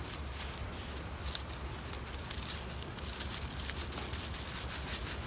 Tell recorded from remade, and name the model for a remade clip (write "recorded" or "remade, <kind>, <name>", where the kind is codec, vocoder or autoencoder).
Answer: recorded